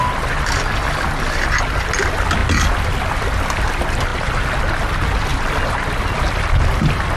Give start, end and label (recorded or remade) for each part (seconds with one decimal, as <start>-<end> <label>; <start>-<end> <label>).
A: 0.0-5.3 recorded; 5.3-6.7 remade; 6.7-7.2 recorded